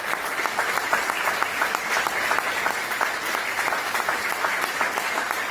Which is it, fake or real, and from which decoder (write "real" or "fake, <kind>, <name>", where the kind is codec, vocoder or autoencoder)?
real